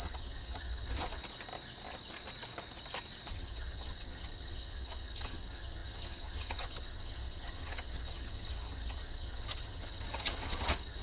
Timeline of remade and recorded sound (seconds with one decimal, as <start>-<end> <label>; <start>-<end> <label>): 0.0-1.2 remade; 1.2-3.3 recorded; 3.3-11.0 remade